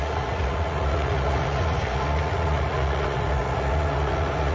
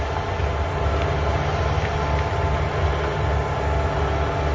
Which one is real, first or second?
second